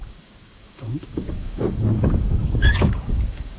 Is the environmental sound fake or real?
fake